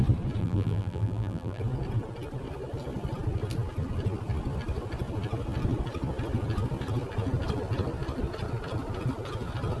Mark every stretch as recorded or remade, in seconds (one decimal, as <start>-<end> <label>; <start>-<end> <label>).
0.0-0.4 recorded; 0.4-1.6 remade; 1.6-9.8 recorded